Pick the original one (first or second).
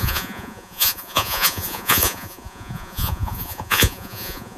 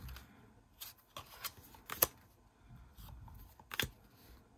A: second